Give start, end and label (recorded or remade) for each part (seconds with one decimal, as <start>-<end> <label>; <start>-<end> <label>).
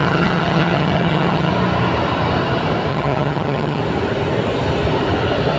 0.0-1.5 remade; 1.5-2.9 recorded; 2.9-3.8 remade; 3.8-5.6 recorded